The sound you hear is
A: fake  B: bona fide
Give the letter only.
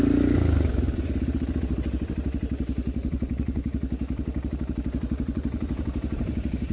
A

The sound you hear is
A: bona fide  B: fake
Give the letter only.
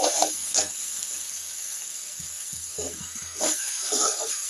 B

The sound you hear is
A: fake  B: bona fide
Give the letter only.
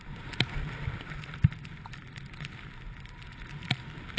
B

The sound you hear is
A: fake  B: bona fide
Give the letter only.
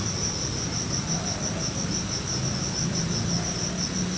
B